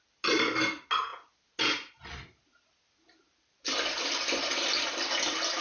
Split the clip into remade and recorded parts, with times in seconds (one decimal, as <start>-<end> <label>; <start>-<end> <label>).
0.0-5.6 recorded

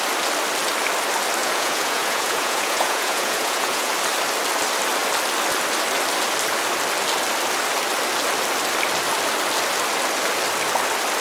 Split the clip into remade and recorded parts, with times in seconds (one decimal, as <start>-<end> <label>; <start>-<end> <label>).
0.0-1.4 recorded; 1.4-3.9 remade; 3.9-11.2 recorded